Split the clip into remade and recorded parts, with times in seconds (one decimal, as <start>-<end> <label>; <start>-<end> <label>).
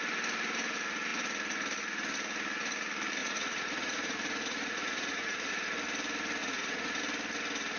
0.0-3.2 recorded; 3.2-5.5 remade; 5.5-6.4 recorded; 6.4-7.0 remade; 7.0-7.8 recorded